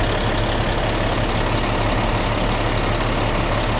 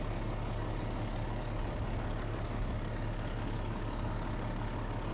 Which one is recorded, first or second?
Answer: first